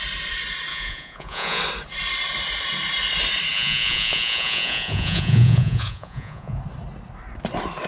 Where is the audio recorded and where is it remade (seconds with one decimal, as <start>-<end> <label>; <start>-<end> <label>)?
0.0-0.7 recorded; 0.7-1.6 remade; 1.6-3.5 recorded; 3.5-6.6 remade; 6.6-7.9 recorded